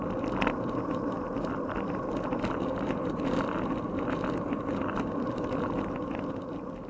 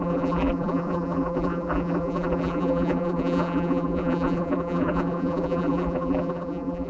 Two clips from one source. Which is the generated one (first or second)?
second